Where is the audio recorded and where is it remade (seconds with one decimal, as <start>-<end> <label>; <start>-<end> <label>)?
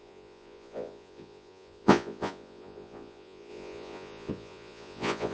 0.0-5.3 remade